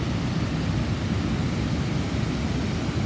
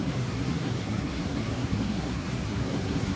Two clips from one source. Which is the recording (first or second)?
first